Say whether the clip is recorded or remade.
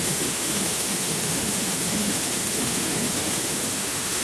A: remade